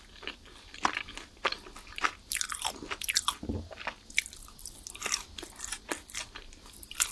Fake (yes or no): no